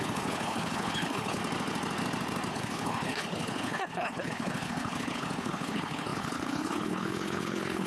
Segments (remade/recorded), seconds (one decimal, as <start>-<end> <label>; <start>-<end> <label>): 0.0-1.4 remade; 1.4-2.5 recorded; 2.5-7.9 remade